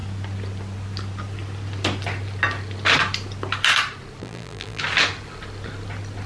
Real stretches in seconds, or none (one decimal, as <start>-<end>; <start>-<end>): 0.0-4.2; 4.8-6.3